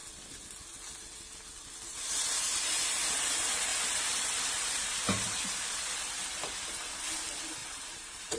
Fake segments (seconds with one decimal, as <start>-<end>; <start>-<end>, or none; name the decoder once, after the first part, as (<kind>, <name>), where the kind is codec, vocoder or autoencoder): 7.6-8.4 (vocoder, BigVGAN v2)